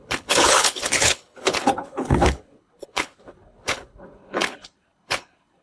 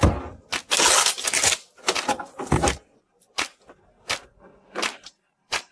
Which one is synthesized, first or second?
first